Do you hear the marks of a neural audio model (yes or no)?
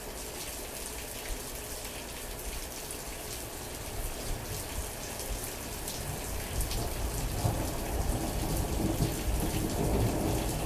no